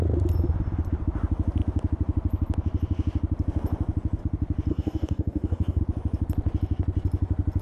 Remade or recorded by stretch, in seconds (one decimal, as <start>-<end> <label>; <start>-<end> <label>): 0.0-4.7 recorded; 4.7-5.8 remade; 5.8-7.6 recorded